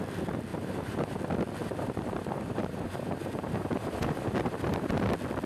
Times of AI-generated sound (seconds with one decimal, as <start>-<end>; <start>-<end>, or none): 0.5-1.2; 1.6-4.9